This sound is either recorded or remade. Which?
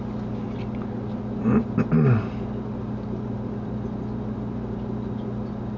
recorded